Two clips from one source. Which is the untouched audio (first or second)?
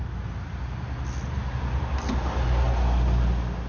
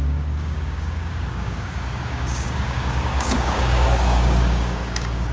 first